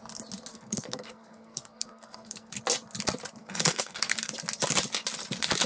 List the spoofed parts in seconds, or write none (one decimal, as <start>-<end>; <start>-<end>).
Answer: 0.5-2.6; 3.4-4.3

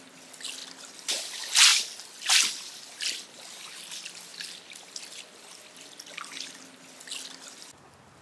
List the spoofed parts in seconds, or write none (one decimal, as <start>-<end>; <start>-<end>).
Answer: none

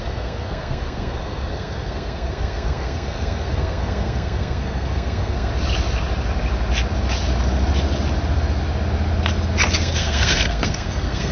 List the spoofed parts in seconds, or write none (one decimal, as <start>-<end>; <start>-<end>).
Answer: 0.0-5.5; 9.8-11.3

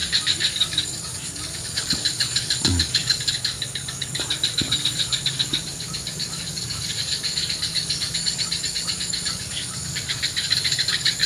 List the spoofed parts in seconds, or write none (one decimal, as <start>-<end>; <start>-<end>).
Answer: 0.0-11.3

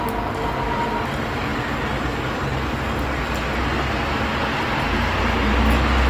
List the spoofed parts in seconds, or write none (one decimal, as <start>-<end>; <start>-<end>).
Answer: none

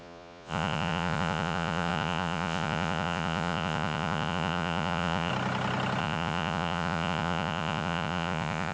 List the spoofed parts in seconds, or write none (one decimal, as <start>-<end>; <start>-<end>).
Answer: 0.0-5.3; 6.0-8.7

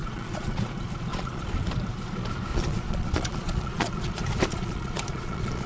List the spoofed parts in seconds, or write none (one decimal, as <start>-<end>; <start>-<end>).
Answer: 0.0-0.6; 1.1-1.6; 2.5-4.1; 4.5-5.7

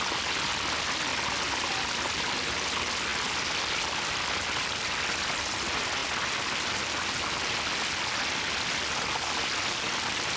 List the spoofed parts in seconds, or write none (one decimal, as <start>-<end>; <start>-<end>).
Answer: none